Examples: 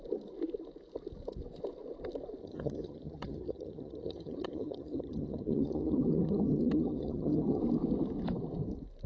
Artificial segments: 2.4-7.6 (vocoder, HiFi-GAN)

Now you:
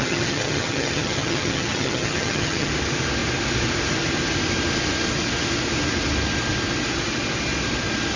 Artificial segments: 0.0-2.7 (vocoder, HiFi-GAN)

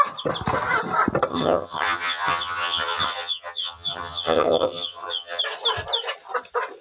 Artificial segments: 1.3-5.4 (vocoder, HiFi-GAN)

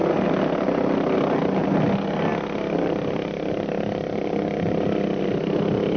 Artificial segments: none

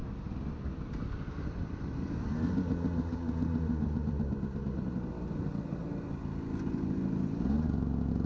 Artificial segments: none

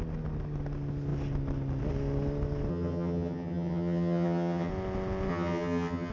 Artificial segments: 2.7-4.7 (vocoder, HiFi-GAN); 5.3-6.1